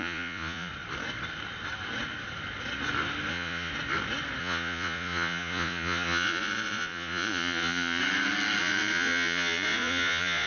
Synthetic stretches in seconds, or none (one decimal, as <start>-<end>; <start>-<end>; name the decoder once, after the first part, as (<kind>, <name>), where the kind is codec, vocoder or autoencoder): 0.0-0.7 (vocoder, Vocos); 3.3-3.7; 4.4-8.0; 8.6-10.5